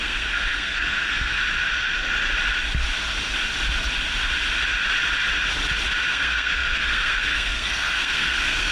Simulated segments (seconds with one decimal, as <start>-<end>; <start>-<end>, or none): 0.0-1.4; 6.1-8.7